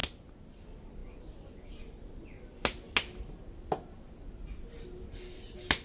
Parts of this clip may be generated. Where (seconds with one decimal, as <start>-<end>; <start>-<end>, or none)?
none